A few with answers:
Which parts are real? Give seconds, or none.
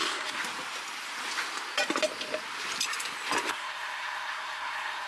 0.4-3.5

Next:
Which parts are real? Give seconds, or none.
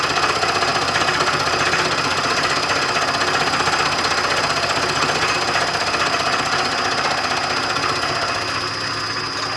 0.0-9.6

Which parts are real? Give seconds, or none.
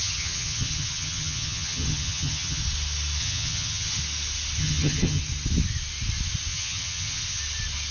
2.6-3.2; 4.0-4.6; 5.2-6.5; 7.4-7.9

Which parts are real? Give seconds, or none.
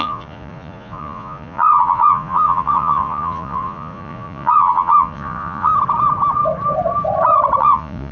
5.7-7.6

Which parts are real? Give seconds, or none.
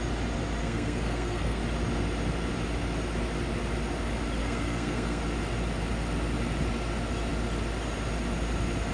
0.0-0.6; 1.6-4.4; 5.2-8.9